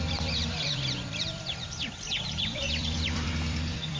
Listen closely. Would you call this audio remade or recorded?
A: remade